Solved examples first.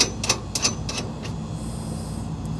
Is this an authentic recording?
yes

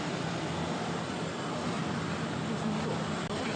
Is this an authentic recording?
yes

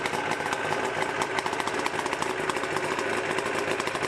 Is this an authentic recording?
yes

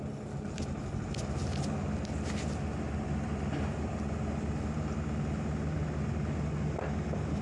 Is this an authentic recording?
yes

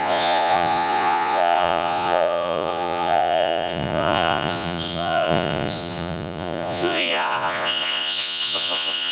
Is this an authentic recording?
no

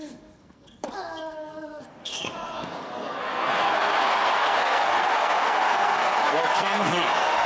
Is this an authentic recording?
no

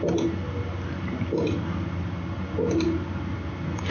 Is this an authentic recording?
yes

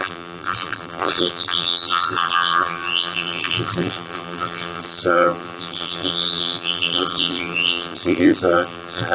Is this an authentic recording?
no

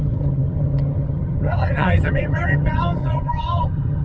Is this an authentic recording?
no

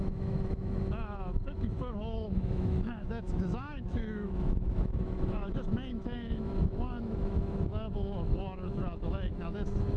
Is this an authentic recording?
no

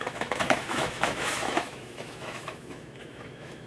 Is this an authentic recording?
no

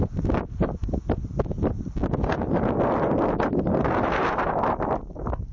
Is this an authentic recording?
yes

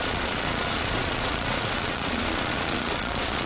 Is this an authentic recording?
no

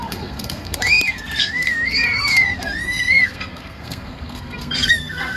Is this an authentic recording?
no